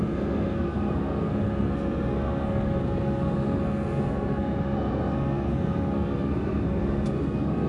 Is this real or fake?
fake